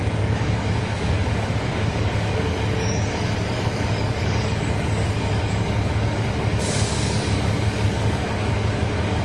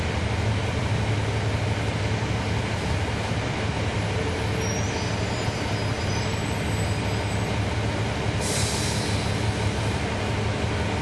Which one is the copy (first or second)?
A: first